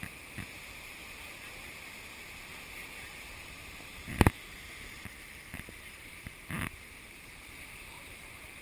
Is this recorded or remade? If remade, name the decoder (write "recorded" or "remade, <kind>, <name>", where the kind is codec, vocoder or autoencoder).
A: remade, vocoder, BigVGAN v2